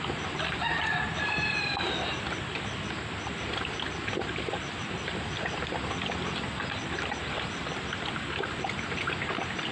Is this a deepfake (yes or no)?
no